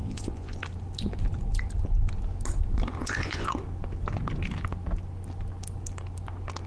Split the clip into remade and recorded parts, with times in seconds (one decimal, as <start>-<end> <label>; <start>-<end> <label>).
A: 0.0-0.6 remade; 0.6-3.0 recorded; 3.0-3.5 remade; 3.5-6.7 recorded